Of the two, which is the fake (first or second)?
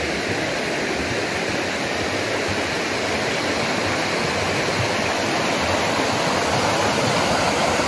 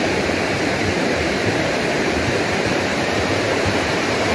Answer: second